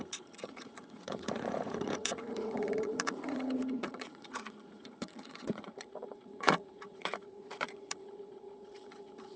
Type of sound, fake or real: fake